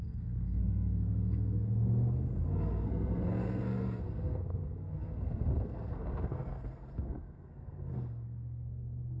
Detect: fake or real fake